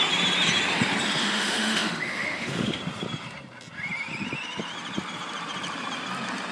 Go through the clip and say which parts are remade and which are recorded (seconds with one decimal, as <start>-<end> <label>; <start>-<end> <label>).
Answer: 0.0-1.2 recorded; 1.2-2.8 remade; 2.8-6.5 recorded